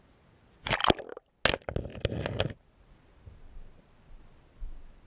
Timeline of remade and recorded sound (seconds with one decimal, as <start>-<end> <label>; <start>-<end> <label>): 0.0-5.1 recorded